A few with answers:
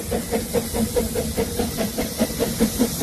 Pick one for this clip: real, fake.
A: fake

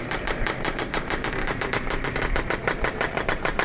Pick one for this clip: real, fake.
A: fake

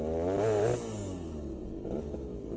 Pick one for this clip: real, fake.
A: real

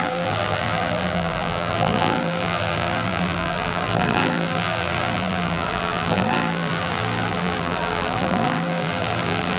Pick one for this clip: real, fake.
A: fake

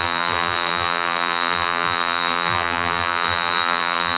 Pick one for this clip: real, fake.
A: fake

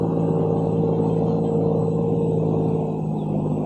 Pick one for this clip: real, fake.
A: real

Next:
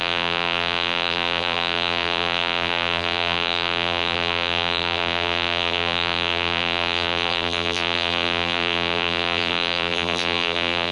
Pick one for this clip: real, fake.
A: fake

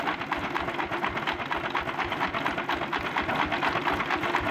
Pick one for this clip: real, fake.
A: real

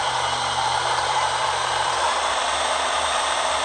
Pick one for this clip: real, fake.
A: fake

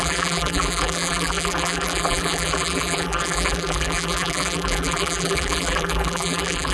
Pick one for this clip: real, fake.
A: fake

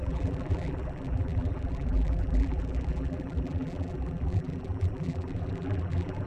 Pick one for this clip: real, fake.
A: fake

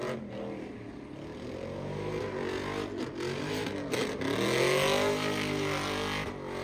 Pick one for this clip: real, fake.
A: real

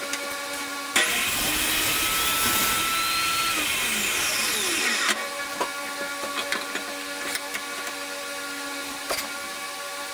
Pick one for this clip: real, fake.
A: real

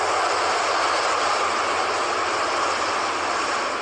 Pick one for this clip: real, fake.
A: fake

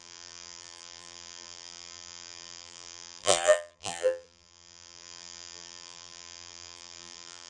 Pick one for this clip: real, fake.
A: fake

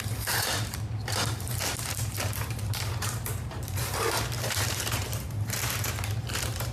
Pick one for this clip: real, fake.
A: fake